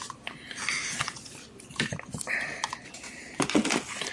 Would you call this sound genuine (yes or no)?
yes